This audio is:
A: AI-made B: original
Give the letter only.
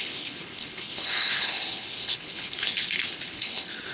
A